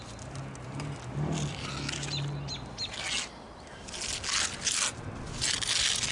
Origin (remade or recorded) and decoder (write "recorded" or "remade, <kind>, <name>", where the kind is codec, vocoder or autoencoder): recorded